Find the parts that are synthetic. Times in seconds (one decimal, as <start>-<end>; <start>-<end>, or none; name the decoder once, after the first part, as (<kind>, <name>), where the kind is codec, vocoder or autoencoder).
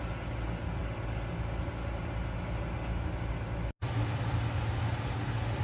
none